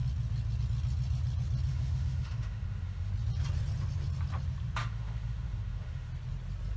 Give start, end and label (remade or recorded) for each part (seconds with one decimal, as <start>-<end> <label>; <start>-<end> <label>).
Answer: 0.0-1.7 recorded; 1.7-3.1 remade; 3.1-4.8 recorded; 4.8-6.1 remade; 6.1-6.8 recorded

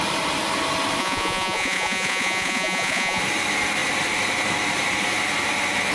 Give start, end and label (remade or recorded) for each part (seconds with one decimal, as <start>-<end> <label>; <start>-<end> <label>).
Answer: 0.0-1.0 recorded; 1.0-3.2 remade; 3.2-5.9 recorded

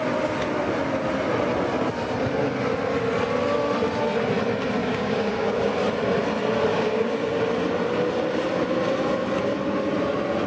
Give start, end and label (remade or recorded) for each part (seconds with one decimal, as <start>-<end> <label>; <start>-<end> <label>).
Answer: 0.0-4.8 recorded; 4.8-5.7 remade; 5.7-6.7 recorded; 6.7-7.2 remade; 7.2-10.5 recorded

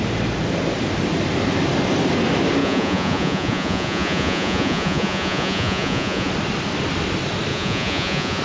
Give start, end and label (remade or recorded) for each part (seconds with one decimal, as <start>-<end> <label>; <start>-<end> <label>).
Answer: 0.0-2.6 recorded; 2.6-6.3 remade; 6.3-7.5 recorded; 7.5-8.4 remade

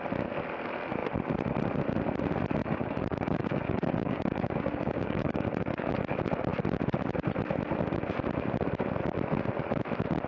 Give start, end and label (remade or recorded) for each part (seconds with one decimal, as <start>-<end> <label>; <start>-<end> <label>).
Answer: 0.0-2.6 recorded; 2.6-5.9 remade; 5.9-10.3 recorded

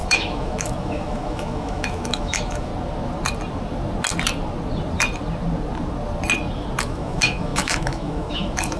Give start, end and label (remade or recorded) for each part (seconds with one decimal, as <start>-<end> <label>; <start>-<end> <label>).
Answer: 0.0-2.7 remade; 2.7-6.8 recorded; 6.8-8.8 remade

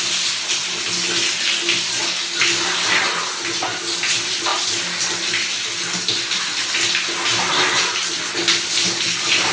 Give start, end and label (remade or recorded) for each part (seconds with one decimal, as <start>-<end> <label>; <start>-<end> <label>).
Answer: 0.0-9.5 recorded

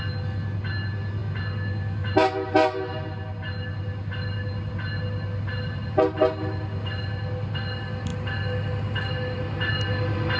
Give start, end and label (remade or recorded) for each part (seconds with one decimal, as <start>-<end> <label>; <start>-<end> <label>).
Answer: 0.0-10.4 recorded